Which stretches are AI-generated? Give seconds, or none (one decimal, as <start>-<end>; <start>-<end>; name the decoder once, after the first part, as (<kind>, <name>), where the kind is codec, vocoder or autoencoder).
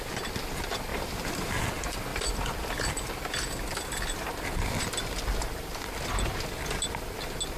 0.9-1.6 (vocoder, BigVGAN v2)